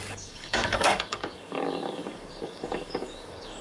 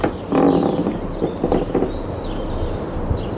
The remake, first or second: first